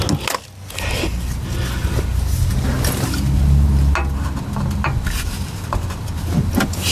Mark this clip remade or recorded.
recorded